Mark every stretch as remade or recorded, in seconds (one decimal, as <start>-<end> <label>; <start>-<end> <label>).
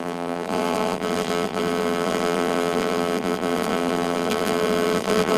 0.0-5.4 remade